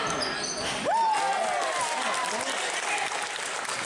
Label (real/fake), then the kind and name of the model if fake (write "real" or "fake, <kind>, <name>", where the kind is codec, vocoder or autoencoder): real